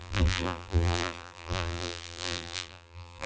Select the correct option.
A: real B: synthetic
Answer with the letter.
B